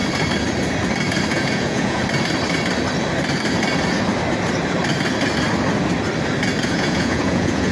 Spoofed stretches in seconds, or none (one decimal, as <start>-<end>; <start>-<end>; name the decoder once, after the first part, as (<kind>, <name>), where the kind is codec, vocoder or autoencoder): 1.3-2.0 (vocoder, Vocos); 6.6-7.7